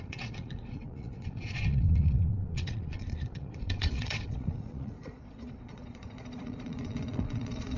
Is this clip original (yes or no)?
no